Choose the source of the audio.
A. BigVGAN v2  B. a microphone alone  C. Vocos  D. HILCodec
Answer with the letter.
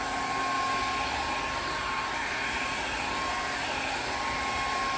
B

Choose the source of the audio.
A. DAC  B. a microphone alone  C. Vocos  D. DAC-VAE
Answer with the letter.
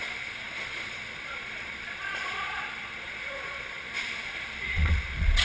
C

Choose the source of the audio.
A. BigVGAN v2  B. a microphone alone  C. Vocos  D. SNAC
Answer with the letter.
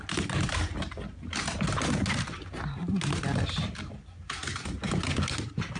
B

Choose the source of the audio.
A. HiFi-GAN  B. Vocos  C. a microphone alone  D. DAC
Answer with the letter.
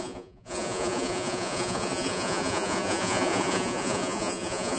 B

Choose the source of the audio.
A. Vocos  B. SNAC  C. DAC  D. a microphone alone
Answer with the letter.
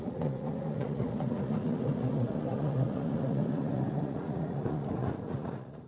A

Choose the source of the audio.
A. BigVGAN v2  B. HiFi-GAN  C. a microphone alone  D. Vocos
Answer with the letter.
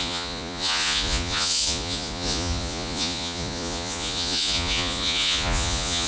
D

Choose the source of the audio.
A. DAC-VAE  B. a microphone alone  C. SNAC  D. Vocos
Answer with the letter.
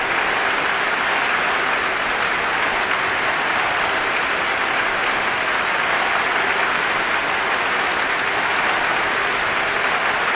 B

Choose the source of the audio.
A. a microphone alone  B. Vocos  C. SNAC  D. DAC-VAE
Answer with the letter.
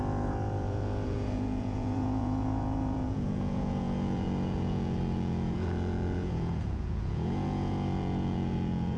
B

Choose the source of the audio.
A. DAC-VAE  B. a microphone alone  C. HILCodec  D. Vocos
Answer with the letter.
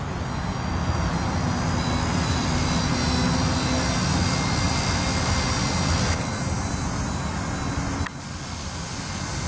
B